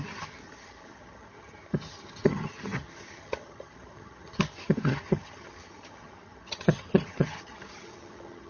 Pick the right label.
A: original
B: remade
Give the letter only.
B